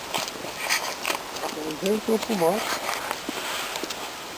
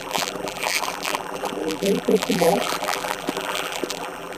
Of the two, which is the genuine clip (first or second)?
first